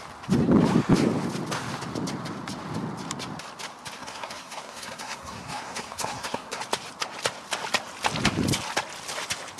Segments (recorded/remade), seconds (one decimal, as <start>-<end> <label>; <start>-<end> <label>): 0.0-4.0 recorded; 4.0-6.6 remade; 6.6-9.6 recorded